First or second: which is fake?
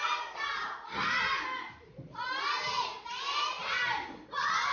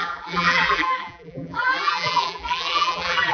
second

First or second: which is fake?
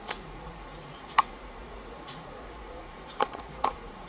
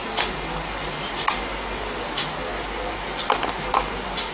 first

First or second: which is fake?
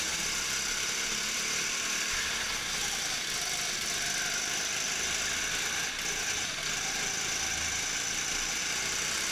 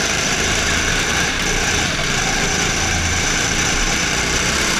second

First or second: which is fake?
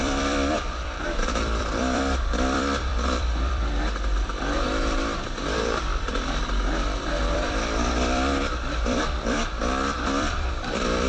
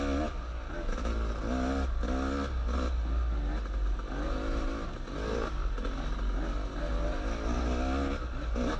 first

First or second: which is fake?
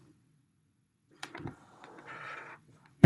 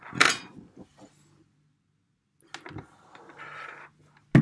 first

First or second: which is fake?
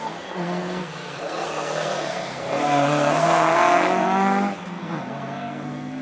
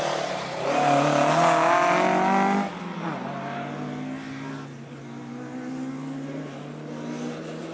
first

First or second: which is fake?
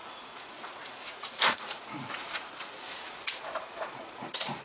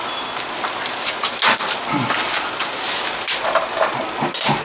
first